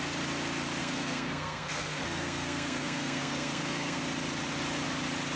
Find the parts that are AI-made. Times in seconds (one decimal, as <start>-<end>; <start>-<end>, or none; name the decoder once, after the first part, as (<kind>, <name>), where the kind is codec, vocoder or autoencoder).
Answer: 0.8-4.0 (codec, SNAC)